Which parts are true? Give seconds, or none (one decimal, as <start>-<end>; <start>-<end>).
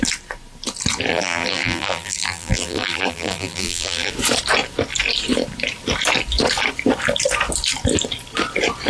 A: 0.0-1.1; 4.1-8.9